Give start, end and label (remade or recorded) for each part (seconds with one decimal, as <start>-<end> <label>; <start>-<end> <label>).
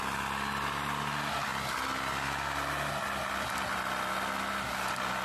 0.0-5.2 recorded